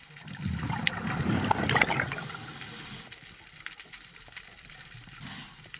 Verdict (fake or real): real